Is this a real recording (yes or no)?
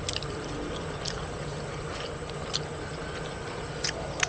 yes